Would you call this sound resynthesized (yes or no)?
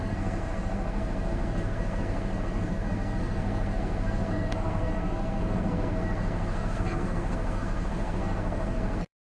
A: yes